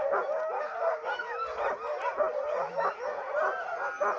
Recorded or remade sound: recorded